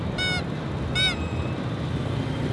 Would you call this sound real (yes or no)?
yes